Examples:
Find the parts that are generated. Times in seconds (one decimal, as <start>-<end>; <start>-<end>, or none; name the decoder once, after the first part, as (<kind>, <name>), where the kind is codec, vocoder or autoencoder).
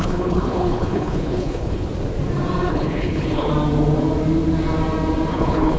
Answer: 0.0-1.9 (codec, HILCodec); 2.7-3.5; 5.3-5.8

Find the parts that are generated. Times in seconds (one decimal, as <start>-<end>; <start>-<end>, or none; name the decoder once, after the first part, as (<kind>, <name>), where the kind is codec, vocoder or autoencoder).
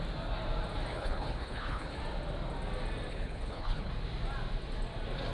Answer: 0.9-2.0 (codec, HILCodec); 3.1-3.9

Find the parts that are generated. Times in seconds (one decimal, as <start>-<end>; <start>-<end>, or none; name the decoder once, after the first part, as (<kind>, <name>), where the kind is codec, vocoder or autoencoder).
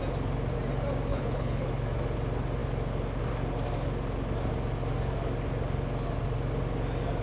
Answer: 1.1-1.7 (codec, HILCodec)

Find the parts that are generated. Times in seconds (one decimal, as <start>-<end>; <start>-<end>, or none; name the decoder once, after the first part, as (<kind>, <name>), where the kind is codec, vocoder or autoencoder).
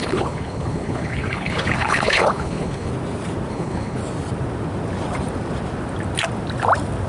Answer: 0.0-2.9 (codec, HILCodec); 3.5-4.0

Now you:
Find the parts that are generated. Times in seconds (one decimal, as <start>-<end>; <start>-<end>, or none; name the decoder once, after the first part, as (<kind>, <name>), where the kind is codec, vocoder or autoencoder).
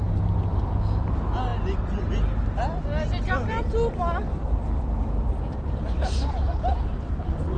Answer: none